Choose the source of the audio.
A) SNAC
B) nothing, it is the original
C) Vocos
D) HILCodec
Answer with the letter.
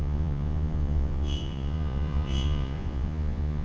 C